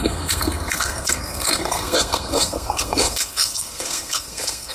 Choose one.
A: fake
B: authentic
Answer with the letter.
A